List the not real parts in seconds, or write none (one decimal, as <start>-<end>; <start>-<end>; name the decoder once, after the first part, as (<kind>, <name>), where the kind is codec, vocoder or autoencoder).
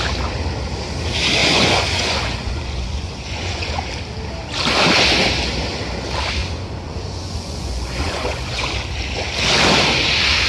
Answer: 1.4-3.7 (vocoder, Vocos); 6.4-8.6